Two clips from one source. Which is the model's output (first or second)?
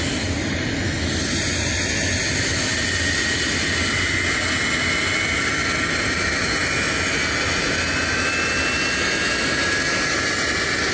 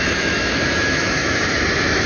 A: second